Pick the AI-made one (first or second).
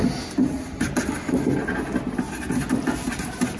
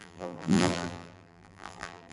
second